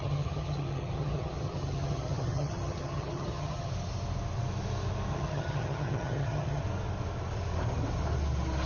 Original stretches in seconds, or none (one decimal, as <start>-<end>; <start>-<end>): 3.7-5.1; 6.6-8.7

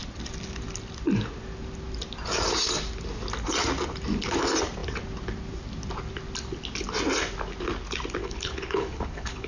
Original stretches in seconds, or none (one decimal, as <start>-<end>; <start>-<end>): 0.0-8.2

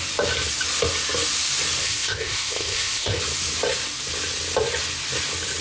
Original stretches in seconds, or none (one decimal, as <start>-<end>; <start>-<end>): 0.0-1.8; 3.2-5.6

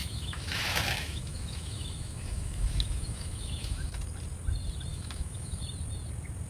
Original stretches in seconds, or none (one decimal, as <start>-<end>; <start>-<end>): 3.9-4.9; 5.6-6.5

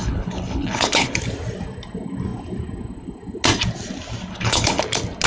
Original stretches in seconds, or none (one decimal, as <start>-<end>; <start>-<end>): 1.2-4.3; 4.8-5.3